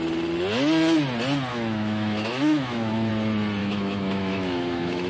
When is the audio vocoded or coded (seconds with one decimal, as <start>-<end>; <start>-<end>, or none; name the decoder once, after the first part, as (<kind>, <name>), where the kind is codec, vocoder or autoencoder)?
1.5-3.1 (autoencoder, DAC-VAE); 3.6-5.1